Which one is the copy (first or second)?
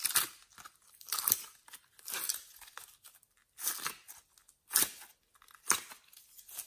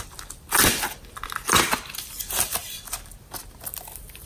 second